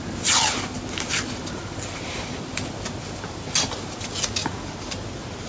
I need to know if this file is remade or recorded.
recorded